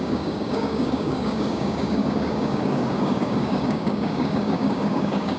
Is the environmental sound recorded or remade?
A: remade